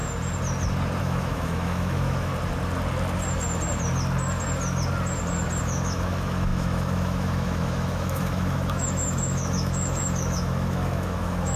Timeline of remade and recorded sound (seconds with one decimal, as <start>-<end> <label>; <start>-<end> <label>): 0.0-1.0 recorded; 1.0-2.3 remade; 2.3-5.6 recorded; 5.6-11.6 remade